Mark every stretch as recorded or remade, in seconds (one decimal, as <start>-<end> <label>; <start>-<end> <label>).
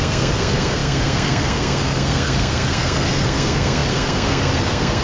0.0-5.0 remade